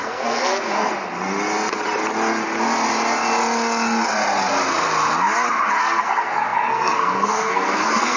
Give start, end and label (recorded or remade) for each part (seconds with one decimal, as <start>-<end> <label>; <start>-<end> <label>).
0.0-0.9 remade; 0.9-5.8 recorded; 5.8-8.2 remade